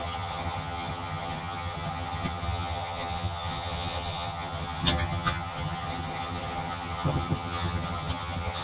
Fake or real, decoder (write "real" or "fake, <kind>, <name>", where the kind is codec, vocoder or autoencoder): fake, vocoder, HiFi-GAN